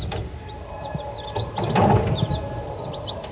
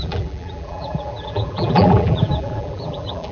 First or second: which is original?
first